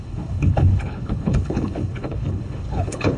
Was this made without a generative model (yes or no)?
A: no